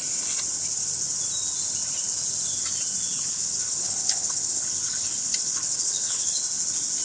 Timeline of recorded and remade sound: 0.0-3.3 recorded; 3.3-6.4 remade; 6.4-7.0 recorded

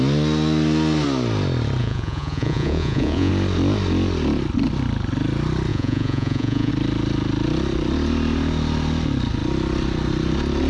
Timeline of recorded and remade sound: 0.0-1.8 recorded; 1.8-3.3 remade; 3.3-5.7 recorded; 5.7-6.7 remade; 6.7-10.7 recorded

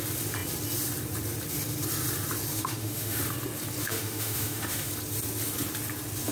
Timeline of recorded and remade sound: 0.0-2.5 recorded; 2.5-3.2 remade; 3.2-3.8 recorded; 3.8-4.9 remade; 4.9-6.3 recorded

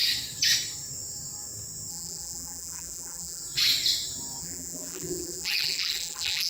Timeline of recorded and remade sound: 0.0-1.9 recorded; 1.9-3.4 remade; 3.4-4.4 recorded; 4.4-6.5 remade

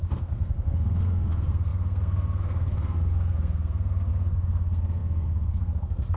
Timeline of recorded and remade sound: 0.0-6.2 remade

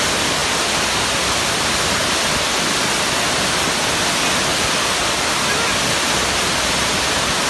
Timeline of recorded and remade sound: 0.0-7.5 recorded

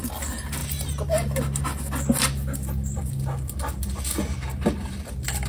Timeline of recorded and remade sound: 0.0-5.5 recorded

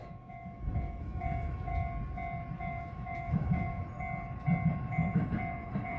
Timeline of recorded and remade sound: 0.0-1.7 remade; 1.7-2.6 recorded; 2.6-3.8 remade; 3.8-4.8 recorded; 4.8-6.0 remade